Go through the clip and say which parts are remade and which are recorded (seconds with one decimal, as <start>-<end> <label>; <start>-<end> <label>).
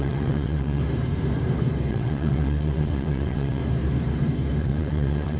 0.0-0.8 remade; 0.8-1.9 recorded; 1.9-3.6 remade; 3.6-4.6 recorded; 4.6-5.4 remade